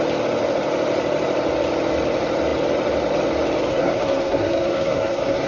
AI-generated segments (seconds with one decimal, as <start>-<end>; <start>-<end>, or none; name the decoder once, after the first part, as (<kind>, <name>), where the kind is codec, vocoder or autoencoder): 3.7-5.5 (codec, SNAC)